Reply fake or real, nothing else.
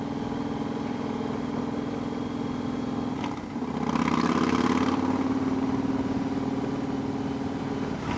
real